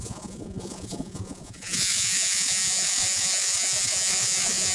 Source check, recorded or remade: remade